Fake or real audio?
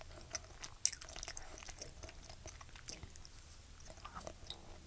real